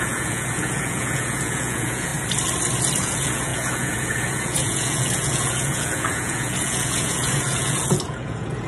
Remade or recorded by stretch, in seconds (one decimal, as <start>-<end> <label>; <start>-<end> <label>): 0.0-2.1 remade; 2.1-3.0 recorded; 3.0-8.7 remade